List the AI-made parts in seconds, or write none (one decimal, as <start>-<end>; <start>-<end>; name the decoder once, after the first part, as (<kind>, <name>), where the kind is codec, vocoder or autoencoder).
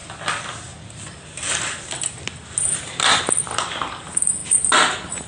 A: none